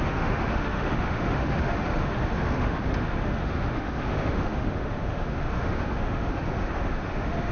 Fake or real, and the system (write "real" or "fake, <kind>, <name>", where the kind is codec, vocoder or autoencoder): fake, autoencoder, DAC-VAE